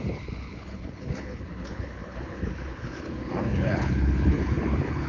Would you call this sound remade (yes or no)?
yes